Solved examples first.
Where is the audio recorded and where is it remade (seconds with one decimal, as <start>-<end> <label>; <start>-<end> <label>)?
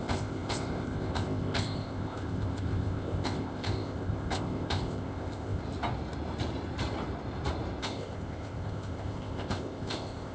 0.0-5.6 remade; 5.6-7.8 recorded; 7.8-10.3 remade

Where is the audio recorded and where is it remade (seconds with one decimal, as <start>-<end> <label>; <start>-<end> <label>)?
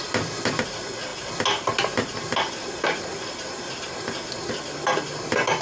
0.0-5.6 recorded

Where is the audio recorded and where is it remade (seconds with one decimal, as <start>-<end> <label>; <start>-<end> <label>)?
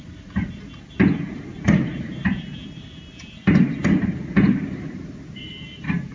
0.0-6.1 remade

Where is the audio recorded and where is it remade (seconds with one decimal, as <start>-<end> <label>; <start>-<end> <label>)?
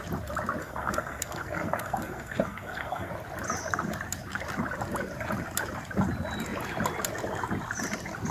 0.0-0.6 recorded; 0.6-3.1 remade; 3.1-8.3 recorded